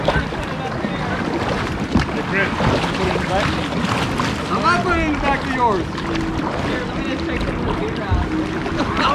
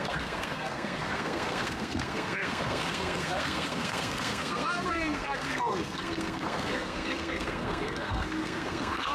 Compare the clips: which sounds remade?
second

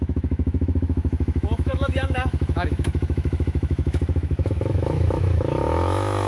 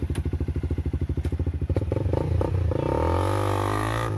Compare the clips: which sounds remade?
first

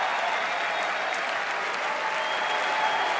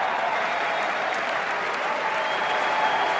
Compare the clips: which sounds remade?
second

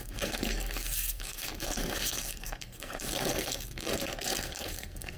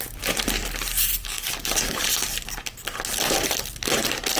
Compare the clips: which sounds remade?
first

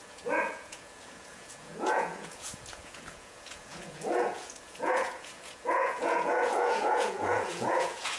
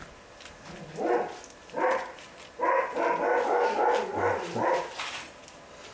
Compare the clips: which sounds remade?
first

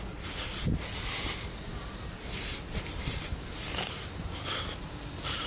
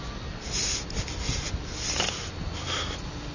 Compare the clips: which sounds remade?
first